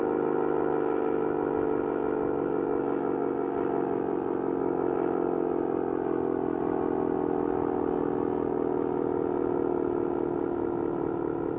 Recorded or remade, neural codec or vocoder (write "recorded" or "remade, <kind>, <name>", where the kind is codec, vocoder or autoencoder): recorded